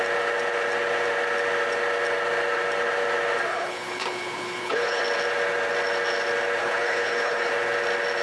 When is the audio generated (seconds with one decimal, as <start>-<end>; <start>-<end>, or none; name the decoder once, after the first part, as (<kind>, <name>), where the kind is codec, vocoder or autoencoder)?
3.5-5.0 (codec, HILCodec); 6.6-7.5